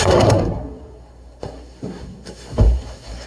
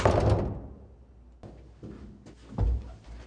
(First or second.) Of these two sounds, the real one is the second